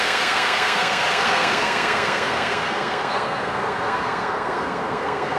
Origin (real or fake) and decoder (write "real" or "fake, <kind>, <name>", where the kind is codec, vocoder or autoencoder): fake, codec, SNAC